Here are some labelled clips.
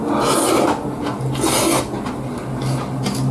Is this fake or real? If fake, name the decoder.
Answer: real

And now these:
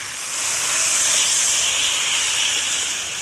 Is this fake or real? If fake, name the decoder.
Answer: real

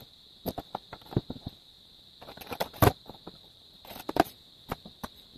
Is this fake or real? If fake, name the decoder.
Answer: real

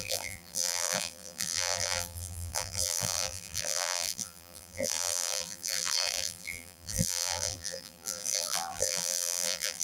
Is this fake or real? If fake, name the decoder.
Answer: fake, vocoder, BigVGAN v2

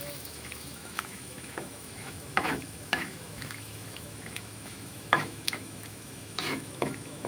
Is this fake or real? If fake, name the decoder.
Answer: fake, autoencoder, DAC-VAE